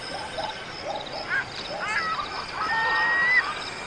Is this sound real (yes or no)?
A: yes